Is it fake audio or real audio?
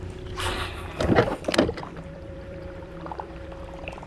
fake